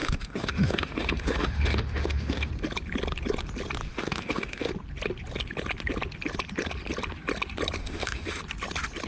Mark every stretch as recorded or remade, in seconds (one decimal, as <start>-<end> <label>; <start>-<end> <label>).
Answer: 0.0-2.5 remade; 2.5-3.8 recorded; 3.8-4.7 remade; 4.7-7.8 recorded; 7.8-8.4 remade; 8.4-9.1 recorded